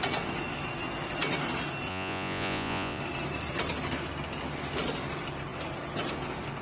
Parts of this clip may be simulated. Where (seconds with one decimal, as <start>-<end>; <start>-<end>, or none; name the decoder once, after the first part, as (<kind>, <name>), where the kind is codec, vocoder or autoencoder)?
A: 1.9-3.0 (vocoder, Vocos)